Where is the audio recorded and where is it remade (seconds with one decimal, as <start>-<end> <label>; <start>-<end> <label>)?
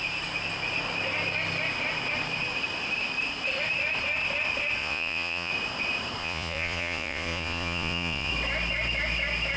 0.0-4.8 recorded; 4.8-5.5 remade; 5.5-6.2 recorded; 6.2-8.3 remade; 8.3-9.6 recorded